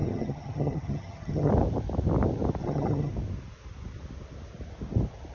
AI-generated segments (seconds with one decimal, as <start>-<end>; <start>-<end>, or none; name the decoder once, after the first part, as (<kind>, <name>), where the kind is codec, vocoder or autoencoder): 0.0-1.5 (vocoder, HiFi-GAN); 2.6-3.1

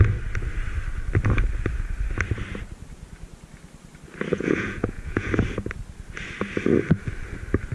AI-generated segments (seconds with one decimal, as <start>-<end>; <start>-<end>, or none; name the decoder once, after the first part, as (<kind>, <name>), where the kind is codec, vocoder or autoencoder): 4.3-5.3 (vocoder, Vocos)